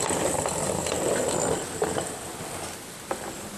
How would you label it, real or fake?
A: real